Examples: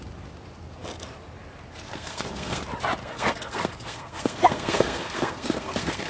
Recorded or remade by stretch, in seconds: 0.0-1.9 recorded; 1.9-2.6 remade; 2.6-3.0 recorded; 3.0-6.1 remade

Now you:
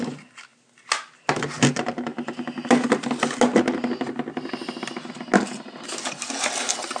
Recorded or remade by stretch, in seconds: 0.0-7.0 recorded

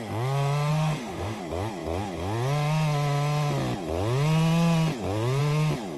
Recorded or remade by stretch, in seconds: 0.0-0.7 recorded; 0.7-1.4 remade; 1.4-6.0 recorded

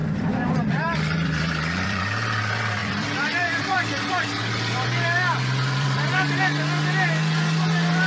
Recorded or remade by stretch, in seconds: 0.0-2.0 remade; 2.0-2.8 recorded; 2.8-6.4 remade; 6.4-8.1 recorded

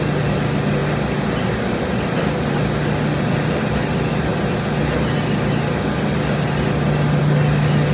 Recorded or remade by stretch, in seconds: 0.0-7.9 recorded